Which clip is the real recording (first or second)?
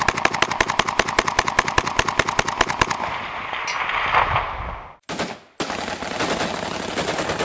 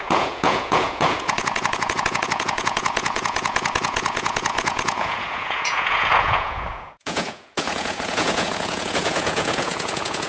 first